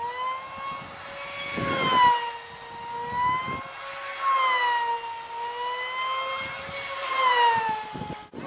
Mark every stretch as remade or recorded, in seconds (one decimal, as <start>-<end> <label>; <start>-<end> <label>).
0.0-7.0 recorded; 7.0-8.0 remade; 8.0-8.5 recorded